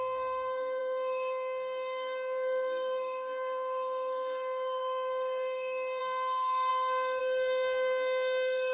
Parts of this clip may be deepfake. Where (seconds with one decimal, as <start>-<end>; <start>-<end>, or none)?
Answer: 0.0-8.7